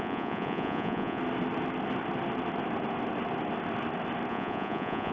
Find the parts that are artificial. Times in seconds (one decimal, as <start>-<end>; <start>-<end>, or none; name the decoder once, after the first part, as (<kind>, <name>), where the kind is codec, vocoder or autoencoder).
0.0-1.2 (vocoder, Vocos); 4.3-5.1

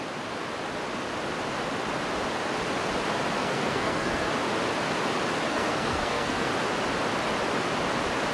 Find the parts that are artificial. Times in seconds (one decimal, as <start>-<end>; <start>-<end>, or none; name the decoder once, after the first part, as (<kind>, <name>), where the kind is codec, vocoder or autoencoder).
3.4-4.3 (codec, SNAC); 5.5-6.5

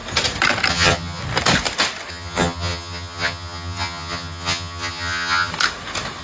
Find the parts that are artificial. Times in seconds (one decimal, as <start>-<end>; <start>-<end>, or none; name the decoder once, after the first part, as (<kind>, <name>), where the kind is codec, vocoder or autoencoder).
0.7-1.2 (vocoder, HiFi-GAN); 2.1-5.5